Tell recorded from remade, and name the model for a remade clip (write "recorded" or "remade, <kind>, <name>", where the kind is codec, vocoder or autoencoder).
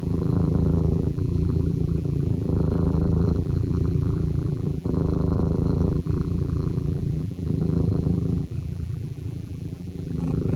remade, vocoder, BigVGAN v2